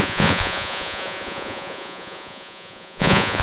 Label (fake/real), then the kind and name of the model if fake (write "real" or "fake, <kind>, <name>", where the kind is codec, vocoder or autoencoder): fake, vocoder, Vocos